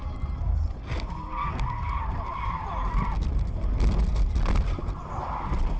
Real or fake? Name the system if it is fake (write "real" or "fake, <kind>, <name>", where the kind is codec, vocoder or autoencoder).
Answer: real